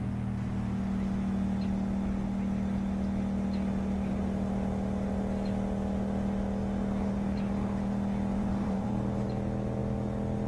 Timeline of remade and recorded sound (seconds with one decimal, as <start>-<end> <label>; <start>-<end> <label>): 0.0-8.3 recorded; 8.3-8.9 remade; 8.9-10.5 recorded

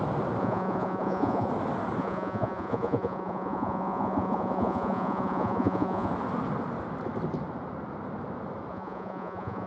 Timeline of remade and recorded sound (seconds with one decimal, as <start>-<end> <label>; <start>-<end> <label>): 0.0-0.4 recorded; 0.4-1.5 remade; 1.5-2.0 recorded; 2.0-6.1 remade; 6.1-8.7 recorded; 8.7-9.7 remade